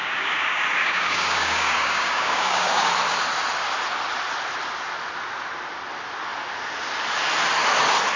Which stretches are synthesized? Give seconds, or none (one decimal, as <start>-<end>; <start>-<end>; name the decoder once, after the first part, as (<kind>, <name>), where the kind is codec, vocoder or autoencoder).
0.0-2.9 (codec, DAC)